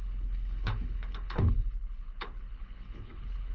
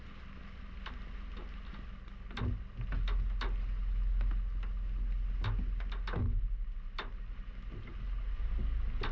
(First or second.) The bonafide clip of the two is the second